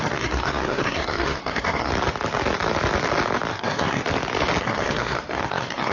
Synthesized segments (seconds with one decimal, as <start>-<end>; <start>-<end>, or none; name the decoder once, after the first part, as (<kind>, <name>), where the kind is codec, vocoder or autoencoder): 0.0-1.9 (codec, SNAC); 3.5-4.0; 4.6-5.9